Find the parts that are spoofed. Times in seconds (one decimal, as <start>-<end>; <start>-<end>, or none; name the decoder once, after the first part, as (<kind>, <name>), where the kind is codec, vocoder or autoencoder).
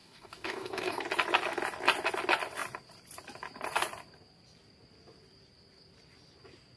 0.0-1.0 (codec, DAC)